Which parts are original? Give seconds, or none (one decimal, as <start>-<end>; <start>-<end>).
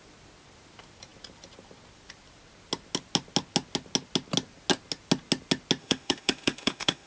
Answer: 0.0-5.8